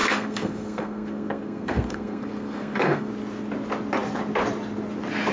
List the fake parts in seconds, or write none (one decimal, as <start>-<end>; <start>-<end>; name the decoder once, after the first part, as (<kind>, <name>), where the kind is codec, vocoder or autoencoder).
0.0-3.1 (codec, SNAC)